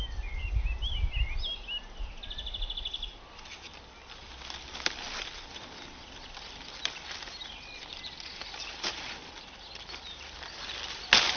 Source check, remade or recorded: recorded